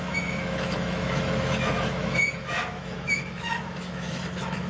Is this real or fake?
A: fake